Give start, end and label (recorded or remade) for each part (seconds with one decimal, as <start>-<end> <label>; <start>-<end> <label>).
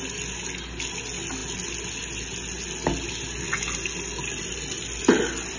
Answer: 0.0-5.6 recorded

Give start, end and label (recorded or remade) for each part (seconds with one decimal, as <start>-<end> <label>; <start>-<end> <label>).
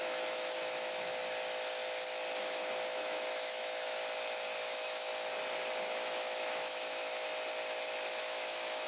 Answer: 0.0-1.2 remade; 1.2-2.4 recorded; 2.4-4.0 remade; 4.0-4.6 recorded; 4.6-5.1 remade; 5.1-5.8 recorded; 5.8-7.3 remade; 7.3-8.2 recorded; 8.2-8.9 remade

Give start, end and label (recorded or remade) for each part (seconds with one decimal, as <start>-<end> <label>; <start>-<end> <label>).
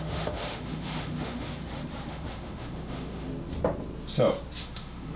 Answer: 0.0-1.5 remade; 1.5-2.1 recorded; 2.1-3.3 remade; 3.3-4.6 recorded; 4.6-5.2 remade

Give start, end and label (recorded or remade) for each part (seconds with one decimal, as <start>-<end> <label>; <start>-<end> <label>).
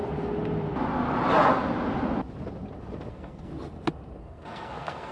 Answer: 0.0-3.1 recorded; 3.1-3.5 remade; 3.5-4.2 recorded; 4.2-5.1 remade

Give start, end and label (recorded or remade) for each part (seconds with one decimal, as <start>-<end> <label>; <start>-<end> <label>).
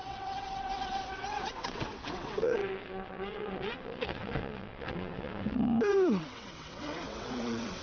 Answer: 0.0-7.8 remade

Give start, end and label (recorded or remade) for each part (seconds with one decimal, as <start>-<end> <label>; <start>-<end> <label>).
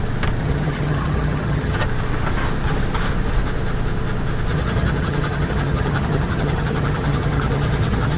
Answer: 0.0-0.4 recorded; 0.4-1.8 remade; 1.8-4.5 recorded; 4.5-8.2 remade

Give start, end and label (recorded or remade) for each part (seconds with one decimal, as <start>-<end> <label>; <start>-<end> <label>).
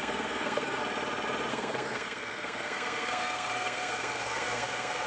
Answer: 0.0-0.8 remade; 0.8-1.5 recorded; 1.5-5.1 remade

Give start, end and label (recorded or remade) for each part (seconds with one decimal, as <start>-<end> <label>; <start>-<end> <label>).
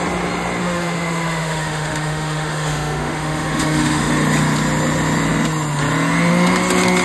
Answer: 0.0-0.6 recorded; 0.6-4.1 remade; 4.1-7.0 recorded